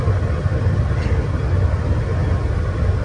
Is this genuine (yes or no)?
yes